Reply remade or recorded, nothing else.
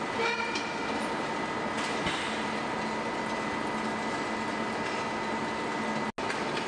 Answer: recorded